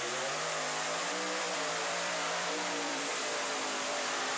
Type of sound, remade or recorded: remade